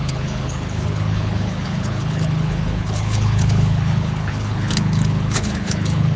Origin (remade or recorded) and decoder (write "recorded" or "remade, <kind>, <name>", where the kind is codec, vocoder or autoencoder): remade, codec, HILCodec